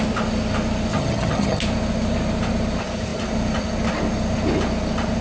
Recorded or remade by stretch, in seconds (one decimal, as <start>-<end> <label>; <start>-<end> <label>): 0.0-0.9 recorded; 0.9-1.6 remade; 1.6-5.2 recorded